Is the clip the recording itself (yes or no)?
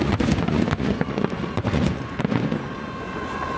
no